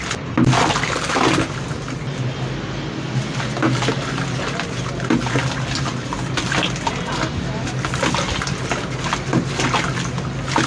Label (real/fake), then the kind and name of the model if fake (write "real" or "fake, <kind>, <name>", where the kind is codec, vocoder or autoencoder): real